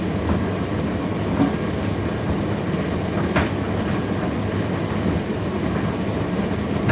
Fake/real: real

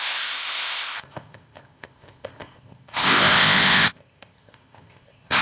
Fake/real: fake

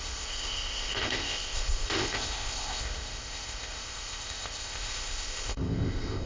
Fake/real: fake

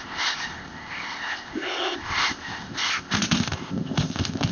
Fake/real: fake